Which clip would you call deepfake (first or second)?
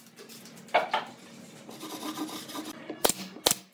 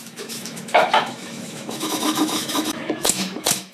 second